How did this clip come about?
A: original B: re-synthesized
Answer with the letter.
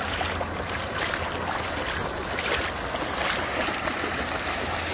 A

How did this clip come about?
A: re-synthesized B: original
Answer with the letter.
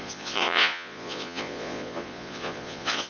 A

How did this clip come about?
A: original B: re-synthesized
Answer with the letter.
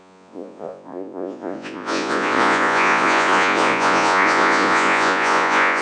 B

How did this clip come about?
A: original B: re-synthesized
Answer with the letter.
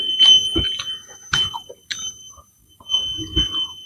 A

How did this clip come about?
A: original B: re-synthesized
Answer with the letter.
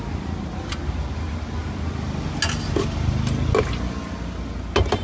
A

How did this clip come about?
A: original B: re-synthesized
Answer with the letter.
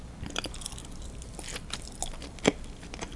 A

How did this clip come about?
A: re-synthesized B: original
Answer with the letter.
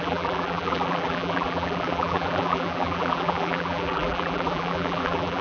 A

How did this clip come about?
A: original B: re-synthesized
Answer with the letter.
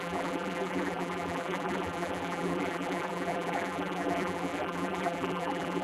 B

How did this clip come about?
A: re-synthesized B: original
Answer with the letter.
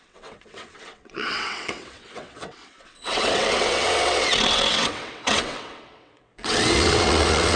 A